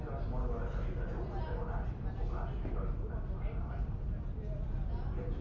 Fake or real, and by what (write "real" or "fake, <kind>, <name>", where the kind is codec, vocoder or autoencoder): real